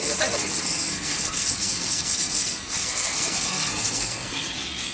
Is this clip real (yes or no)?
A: no